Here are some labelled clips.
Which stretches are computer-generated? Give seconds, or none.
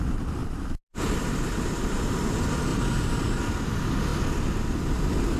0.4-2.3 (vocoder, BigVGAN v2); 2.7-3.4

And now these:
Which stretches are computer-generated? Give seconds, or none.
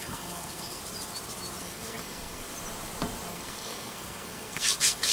0.0-0.8 (codec, SNAC); 1.6-2.5; 3.3-5.1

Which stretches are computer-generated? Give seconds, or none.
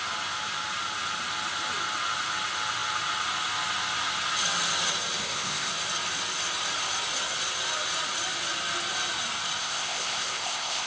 5.2-5.7 (codec, ZipCodec); 9.6-10.9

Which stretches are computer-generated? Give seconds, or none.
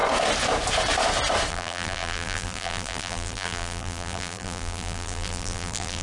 1.5-6.0 (vocoder, BigVGAN v2)